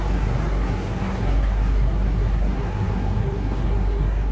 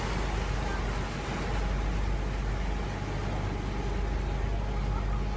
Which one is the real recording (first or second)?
second